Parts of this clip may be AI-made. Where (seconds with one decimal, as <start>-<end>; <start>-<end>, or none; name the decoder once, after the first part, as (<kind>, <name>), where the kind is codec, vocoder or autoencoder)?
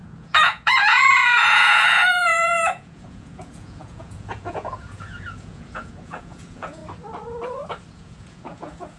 0.0-6.8 (vocoder, Vocos); 7.9-9.0